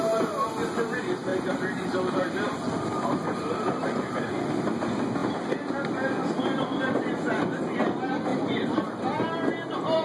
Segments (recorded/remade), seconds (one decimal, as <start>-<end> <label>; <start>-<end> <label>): 0.0-1.3 recorded; 1.3-4.2 remade; 4.2-8.3 recorded; 8.3-9.0 remade; 9.0-10.0 recorded